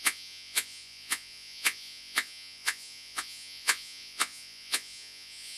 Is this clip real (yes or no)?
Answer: no